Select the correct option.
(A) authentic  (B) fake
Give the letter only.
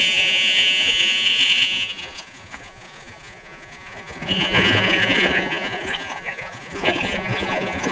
B